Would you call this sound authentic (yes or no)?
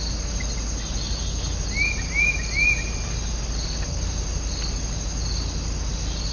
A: yes